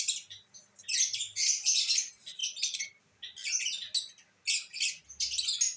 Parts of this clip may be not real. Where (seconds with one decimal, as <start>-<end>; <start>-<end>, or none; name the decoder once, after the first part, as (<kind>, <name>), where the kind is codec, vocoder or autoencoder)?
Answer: none